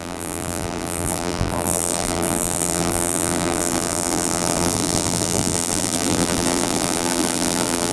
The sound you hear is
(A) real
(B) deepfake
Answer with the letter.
B